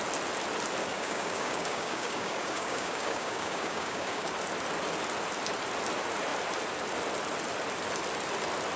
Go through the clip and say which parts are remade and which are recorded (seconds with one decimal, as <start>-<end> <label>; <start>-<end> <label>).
0.0-0.8 recorded; 0.8-4.3 remade; 4.3-8.8 recorded